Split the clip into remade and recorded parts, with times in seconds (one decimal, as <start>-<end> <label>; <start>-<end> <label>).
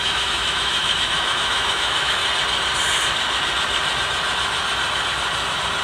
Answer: 0.0-2.2 remade; 2.2-5.8 recorded